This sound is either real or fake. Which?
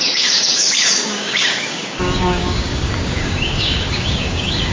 fake